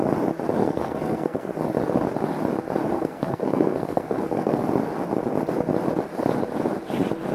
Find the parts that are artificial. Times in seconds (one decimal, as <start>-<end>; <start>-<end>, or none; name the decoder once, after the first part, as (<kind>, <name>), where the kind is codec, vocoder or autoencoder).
0.6-1.5 (codec, SNAC); 2.9-4.6